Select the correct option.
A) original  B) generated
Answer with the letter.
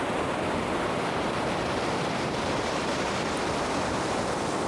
B